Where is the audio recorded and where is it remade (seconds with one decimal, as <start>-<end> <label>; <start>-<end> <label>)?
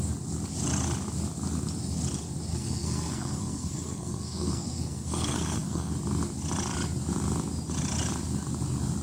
0.0-2.5 recorded; 2.5-5.9 remade; 5.9-9.0 recorded